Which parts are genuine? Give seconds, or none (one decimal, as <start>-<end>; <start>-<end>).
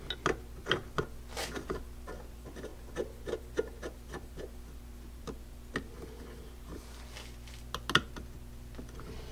0.0-9.3